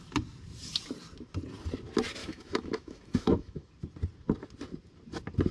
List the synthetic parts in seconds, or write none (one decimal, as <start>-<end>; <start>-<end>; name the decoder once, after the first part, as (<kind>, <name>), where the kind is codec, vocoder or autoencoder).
2.2-3.7 (autoencoder, DAC-VAE)